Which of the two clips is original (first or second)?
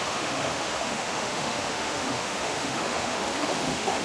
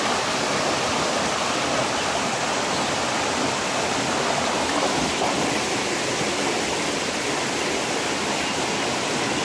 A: second